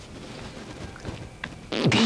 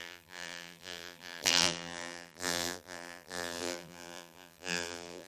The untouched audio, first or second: first